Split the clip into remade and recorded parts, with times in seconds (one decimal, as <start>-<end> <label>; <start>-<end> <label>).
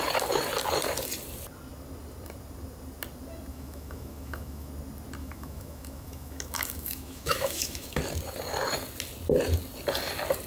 0.0-3.5 recorded; 3.5-4.7 remade; 4.7-5.2 recorded; 5.2-8.0 remade; 8.0-10.5 recorded